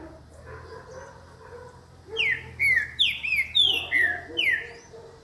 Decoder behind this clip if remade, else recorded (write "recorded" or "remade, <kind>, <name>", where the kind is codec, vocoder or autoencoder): recorded